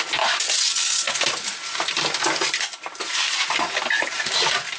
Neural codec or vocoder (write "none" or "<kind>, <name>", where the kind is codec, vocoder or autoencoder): none